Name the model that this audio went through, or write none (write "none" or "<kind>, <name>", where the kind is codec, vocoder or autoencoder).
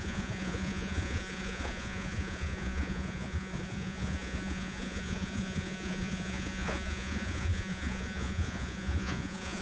vocoder, Vocos